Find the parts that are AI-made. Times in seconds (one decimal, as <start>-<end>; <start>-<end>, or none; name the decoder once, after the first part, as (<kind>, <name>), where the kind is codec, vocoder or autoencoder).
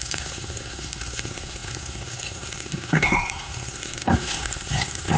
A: 0.0-5.2 (codec, SNAC)